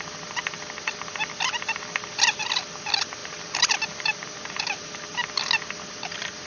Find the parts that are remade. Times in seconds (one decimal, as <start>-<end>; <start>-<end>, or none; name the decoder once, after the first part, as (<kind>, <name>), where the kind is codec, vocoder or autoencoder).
3.2-4.9 (vocoder, BigVGAN v2)